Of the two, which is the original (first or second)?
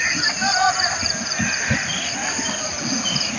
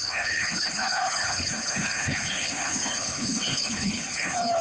first